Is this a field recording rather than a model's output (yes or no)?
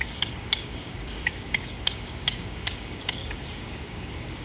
no